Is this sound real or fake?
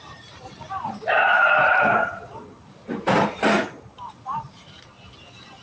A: fake